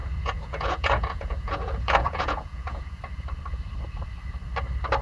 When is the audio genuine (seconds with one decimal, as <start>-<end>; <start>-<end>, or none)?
3.0-5.0